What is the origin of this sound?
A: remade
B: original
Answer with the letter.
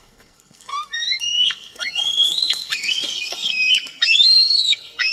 A